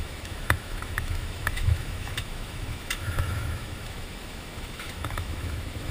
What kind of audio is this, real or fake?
fake